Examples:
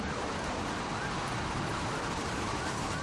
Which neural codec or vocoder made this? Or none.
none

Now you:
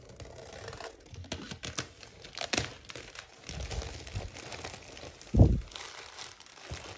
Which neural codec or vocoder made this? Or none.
none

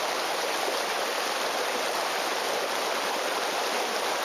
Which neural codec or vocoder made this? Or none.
none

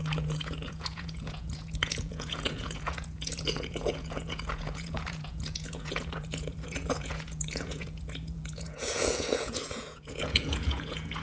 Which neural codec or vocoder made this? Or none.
vocoder, Vocos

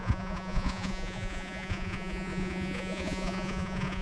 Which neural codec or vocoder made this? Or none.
vocoder, Vocos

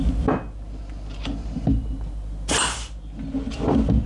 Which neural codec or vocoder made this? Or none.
none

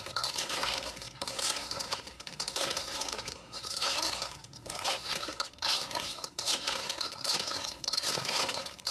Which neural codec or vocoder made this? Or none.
codec, SNAC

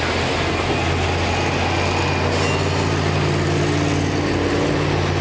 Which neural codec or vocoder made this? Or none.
none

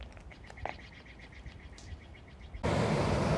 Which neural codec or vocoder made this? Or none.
none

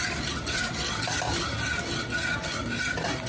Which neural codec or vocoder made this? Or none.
none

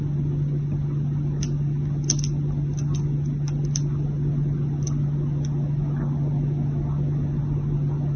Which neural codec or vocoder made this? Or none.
none